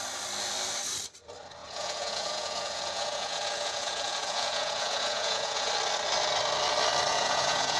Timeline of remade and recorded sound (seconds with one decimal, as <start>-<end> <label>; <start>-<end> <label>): 0.0-1.6 recorded; 1.6-5.7 remade; 5.7-7.1 recorded; 7.1-7.8 remade